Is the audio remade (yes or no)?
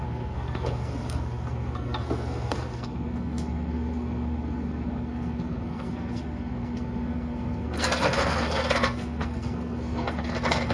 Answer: yes